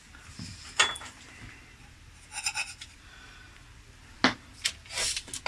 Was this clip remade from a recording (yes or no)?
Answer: no